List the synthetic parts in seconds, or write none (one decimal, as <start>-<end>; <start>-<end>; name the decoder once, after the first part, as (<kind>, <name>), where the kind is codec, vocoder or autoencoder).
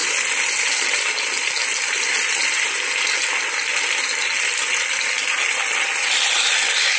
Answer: none